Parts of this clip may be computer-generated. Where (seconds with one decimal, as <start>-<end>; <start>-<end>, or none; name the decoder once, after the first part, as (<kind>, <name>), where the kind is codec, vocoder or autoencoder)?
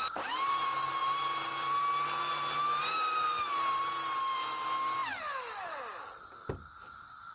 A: 1.0-1.8 (vocoder, BigVGAN v2)